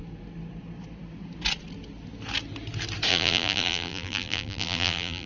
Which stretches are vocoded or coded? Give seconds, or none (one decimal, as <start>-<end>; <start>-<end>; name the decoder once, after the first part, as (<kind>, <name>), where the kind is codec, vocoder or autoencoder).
3.1-5.3 (vocoder, BigVGAN v2)